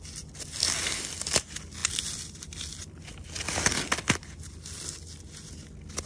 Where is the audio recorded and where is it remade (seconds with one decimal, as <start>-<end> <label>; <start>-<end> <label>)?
0.0-6.1 recorded